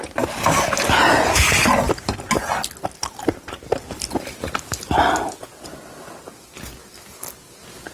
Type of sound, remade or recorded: recorded